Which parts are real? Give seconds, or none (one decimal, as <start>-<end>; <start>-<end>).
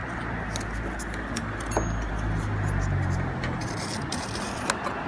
0.0-5.1